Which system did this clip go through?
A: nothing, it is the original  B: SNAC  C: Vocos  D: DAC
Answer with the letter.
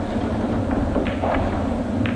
A